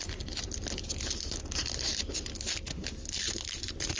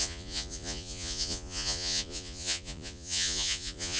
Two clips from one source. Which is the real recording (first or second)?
first